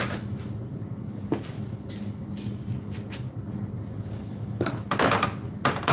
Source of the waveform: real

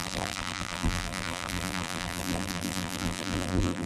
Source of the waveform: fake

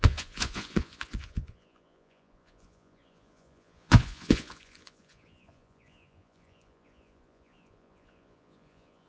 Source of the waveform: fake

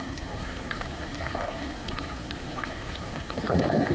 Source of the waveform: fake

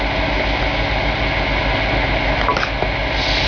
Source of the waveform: real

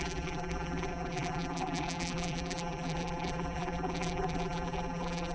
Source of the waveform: fake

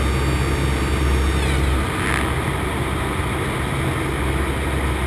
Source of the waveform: real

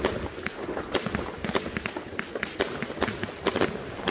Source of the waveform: real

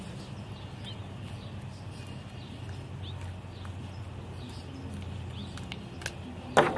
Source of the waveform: real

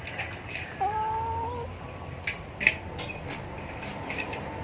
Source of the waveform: real